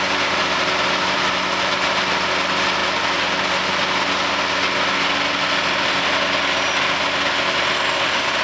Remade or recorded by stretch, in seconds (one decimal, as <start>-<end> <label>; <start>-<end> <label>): 0.0-8.4 recorded